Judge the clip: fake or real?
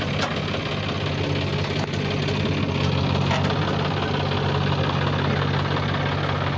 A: real